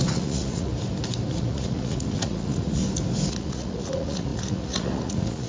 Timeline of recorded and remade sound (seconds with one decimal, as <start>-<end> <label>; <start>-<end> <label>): 0.0-0.7 remade; 0.7-1.3 recorded; 1.3-2.8 remade; 2.8-3.3 recorded; 3.3-5.5 remade